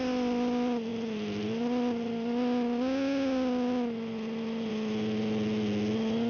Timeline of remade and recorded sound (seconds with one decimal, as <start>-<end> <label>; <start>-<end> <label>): 0.0-6.3 recorded